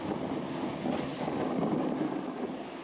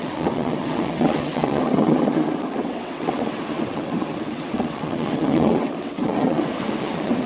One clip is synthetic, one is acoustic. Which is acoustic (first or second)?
first